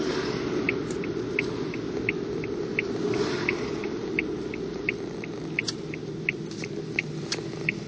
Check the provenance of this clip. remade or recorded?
recorded